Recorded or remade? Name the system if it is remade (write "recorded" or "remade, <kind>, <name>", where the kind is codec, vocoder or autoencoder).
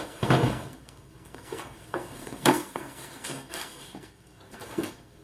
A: remade, codec, SNAC